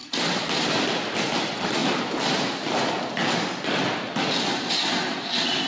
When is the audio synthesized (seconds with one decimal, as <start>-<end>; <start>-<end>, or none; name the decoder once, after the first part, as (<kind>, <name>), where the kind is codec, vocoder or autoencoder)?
0.0-0.8 (vocoder, BigVGAN v2)